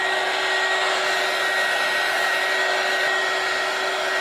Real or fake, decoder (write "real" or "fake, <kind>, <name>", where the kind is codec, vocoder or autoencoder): real